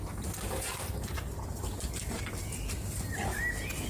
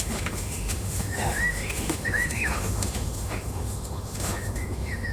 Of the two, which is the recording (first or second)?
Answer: first